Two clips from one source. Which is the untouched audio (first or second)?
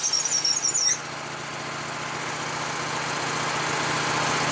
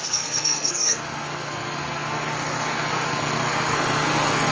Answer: first